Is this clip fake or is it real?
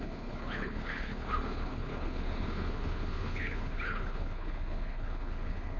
fake